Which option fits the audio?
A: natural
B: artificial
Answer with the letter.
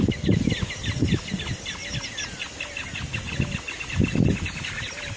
A